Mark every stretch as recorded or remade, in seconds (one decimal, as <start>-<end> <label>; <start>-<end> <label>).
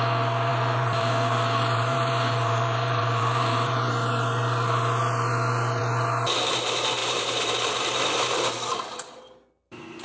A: 0.0-0.5 recorded; 0.5-3.9 remade; 3.9-7.0 recorded; 7.0-8.8 remade; 8.8-10.0 recorded